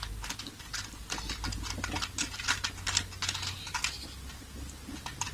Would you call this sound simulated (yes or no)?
no